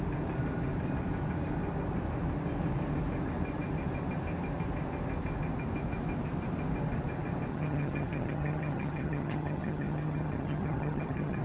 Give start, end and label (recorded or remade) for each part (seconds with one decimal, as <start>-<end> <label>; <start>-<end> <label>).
0.0-7.5 recorded; 7.5-11.4 remade